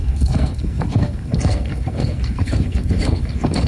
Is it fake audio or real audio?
fake